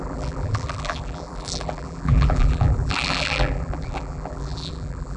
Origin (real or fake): fake